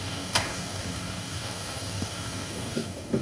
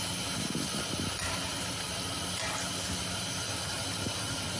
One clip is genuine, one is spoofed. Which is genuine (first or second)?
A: second